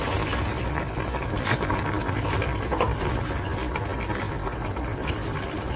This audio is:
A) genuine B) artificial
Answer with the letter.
A